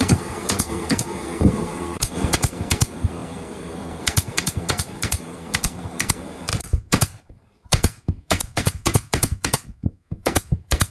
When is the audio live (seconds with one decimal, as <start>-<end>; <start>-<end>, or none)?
none